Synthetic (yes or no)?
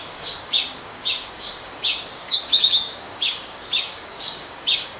yes